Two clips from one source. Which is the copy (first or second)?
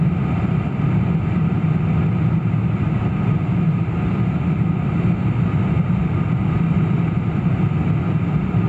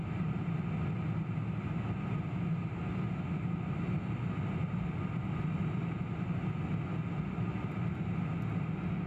first